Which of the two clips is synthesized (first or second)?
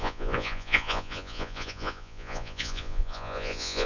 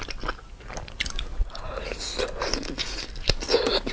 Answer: first